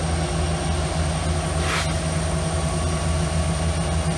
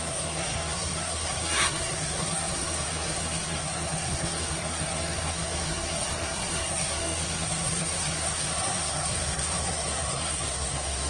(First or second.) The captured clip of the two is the first